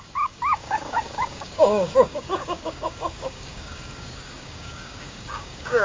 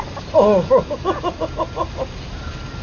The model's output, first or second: first